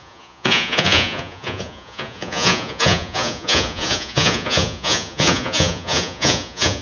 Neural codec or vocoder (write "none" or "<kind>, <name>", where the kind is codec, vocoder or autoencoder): vocoder, Vocos